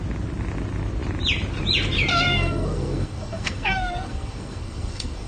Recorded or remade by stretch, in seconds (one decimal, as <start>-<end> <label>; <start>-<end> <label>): 0.0-2.1 recorded; 2.1-5.3 remade